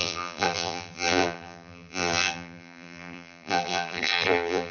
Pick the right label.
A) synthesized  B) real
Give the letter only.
A